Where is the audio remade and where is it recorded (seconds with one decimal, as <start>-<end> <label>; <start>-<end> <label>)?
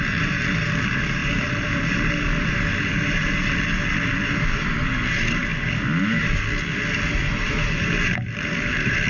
0.0-5.5 remade; 5.5-7.2 recorded; 7.2-9.1 remade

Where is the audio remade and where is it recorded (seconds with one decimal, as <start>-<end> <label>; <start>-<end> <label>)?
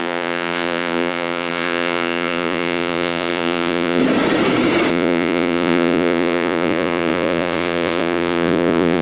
0.0-4.0 remade; 4.0-4.9 recorded; 4.9-9.0 remade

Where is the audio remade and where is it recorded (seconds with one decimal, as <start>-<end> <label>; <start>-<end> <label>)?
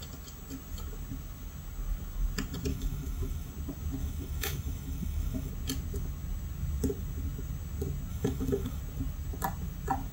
0.0-2.7 recorded; 2.7-3.5 remade; 3.5-4.0 recorded; 4.0-5.5 remade; 5.5-8.1 recorded; 8.1-8.8 remade; 8.8-10.1 recorded